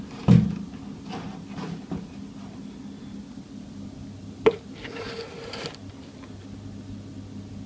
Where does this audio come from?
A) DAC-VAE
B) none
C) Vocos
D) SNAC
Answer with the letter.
B